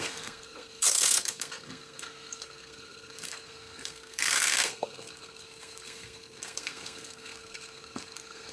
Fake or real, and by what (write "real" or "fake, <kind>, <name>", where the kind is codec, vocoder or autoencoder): fake, codec, SNAC